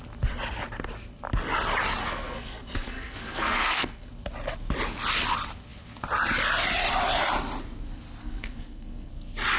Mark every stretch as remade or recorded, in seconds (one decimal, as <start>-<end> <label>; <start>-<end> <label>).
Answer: 0.0-2.0 recorded; 2.0-4.1 remade; 4.1-8.2 recorded; 8.2-9.1 remade; 9.1-9.6 recorded